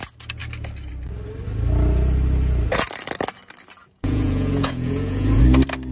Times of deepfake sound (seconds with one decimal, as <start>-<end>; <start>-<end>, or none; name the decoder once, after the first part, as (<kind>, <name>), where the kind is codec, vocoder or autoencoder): 3.8-5.4 (vocoder, Vocos)